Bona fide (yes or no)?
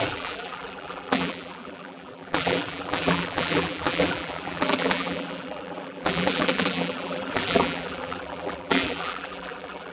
no